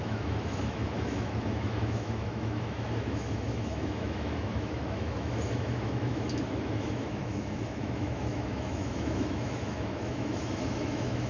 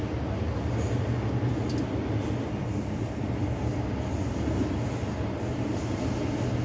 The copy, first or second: first